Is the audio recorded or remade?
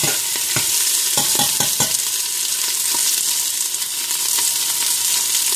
recorded